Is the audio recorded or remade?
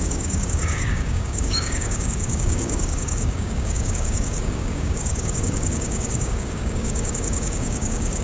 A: remade